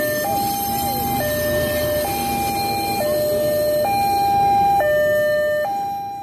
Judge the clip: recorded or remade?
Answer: recorded